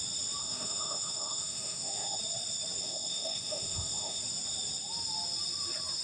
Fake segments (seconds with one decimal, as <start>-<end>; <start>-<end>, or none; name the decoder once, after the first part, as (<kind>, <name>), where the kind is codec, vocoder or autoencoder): 0.4-2.2 (autoencoder, DAC-VAE); 2.8-4.2